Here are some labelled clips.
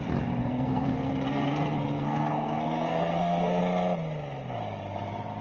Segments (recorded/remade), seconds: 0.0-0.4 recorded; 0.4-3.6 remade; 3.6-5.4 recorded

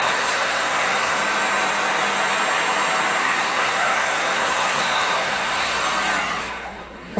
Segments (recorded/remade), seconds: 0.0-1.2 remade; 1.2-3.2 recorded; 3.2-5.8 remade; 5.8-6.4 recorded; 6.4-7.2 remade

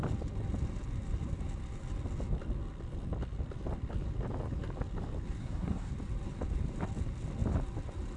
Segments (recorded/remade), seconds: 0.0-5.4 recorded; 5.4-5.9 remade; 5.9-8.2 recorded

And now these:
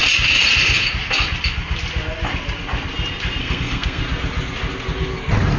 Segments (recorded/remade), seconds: 0.0-3.4 recorded; 3.4-4.0 remade; 4.0-5.6 recorded

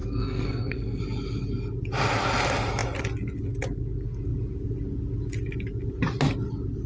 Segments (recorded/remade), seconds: 0.0-1.0 remade; 1.0-6.9 recorded